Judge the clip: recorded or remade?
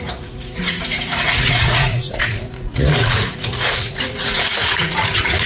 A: remade